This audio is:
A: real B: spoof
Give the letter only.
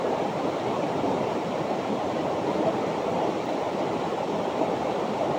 B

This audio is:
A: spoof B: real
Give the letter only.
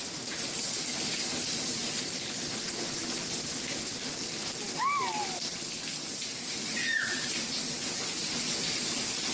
A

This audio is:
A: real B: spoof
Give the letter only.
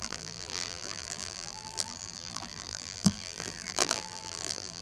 B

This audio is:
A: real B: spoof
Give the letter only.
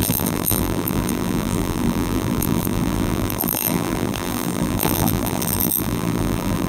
B